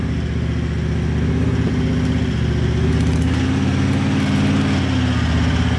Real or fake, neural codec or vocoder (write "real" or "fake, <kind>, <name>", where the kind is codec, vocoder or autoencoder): real